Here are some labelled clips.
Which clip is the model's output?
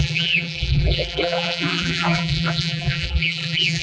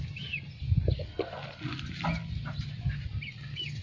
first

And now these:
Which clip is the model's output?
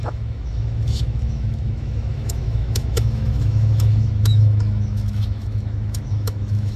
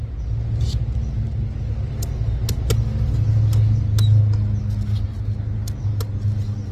first